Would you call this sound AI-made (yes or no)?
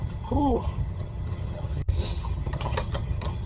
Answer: yes